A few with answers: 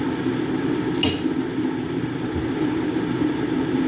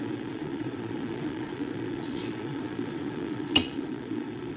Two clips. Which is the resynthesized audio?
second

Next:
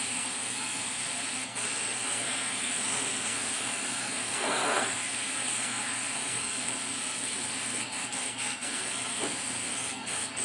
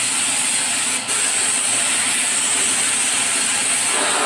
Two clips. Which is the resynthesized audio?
first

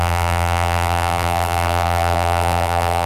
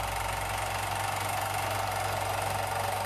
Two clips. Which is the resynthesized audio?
first